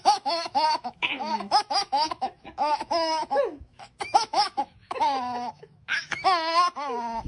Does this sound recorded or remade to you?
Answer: remade